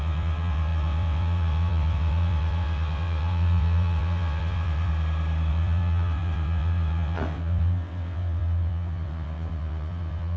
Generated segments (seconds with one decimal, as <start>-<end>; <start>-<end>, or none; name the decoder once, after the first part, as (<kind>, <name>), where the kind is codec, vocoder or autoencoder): 0.0-4.9 (vocoder, WaveNeXt); 5.5-10.4